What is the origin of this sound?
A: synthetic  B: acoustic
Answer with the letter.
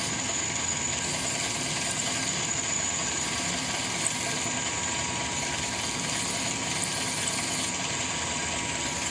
B